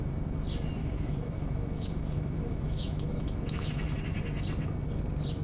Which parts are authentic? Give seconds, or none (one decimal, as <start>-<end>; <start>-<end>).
0.0-0.8; 4.0-5.4

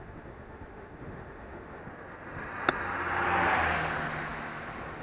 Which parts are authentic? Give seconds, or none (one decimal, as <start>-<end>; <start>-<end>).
1.8-5.0

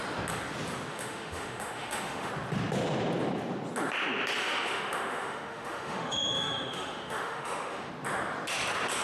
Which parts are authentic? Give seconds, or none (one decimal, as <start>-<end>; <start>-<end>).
0.0-0.9; 2.3-4.4; 7.9-9.0

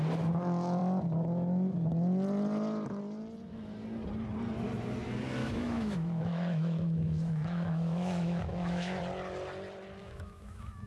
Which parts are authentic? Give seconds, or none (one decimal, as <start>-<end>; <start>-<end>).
0.0-5.4; 9.0-10.0

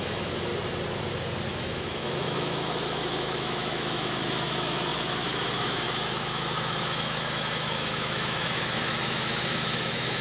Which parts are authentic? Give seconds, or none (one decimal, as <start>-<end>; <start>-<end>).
0.5-1.5

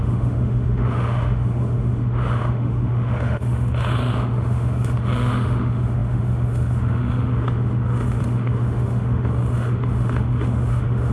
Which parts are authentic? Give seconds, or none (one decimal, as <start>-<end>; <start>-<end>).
none